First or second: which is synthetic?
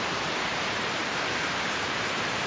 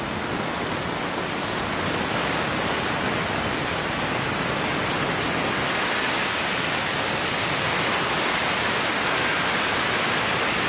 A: first